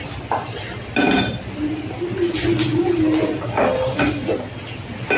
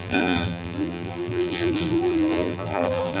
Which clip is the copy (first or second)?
second